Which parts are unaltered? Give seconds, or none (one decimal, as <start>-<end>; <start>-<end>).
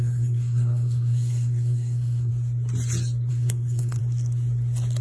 2.3-3.3; 4.0-5.0